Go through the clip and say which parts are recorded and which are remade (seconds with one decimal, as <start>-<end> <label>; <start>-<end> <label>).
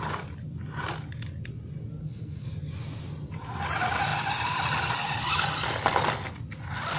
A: 0.0-2.0 recorded; 2.0-2.5 remade; 2.5-7.0 recorded